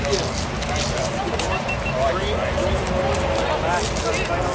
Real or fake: real